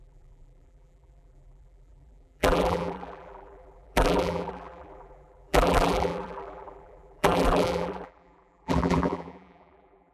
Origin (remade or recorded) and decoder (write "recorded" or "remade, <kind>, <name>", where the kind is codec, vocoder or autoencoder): remade, vocoder, BigVGAN v2